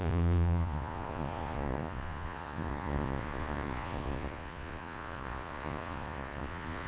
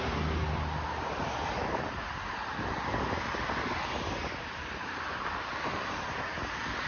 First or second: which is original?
second